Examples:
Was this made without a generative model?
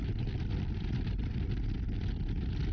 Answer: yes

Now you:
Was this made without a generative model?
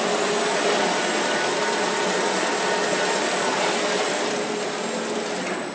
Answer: yes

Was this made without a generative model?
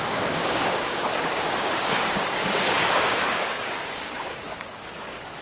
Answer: no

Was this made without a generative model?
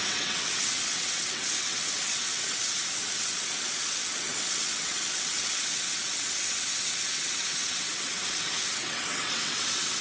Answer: no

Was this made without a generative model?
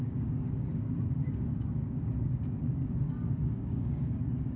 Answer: no